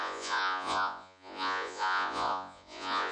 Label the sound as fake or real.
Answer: fake